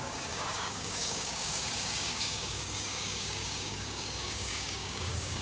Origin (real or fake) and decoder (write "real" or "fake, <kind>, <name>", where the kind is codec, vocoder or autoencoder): fake, codec, DAC